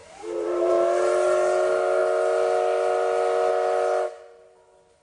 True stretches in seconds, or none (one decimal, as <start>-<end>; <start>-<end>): 0.7-5.0